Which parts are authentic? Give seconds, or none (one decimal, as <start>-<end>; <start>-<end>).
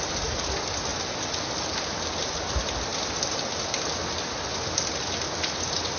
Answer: 0.0-6.0